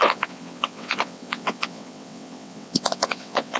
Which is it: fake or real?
fake